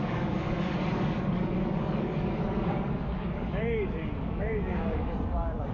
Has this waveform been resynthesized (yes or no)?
yes